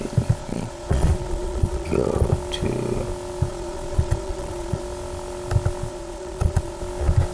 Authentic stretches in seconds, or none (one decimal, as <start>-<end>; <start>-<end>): 0.0-0.4; 2.3-3.5; 4.8-5.9; 6.8-7.3